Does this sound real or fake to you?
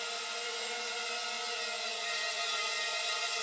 real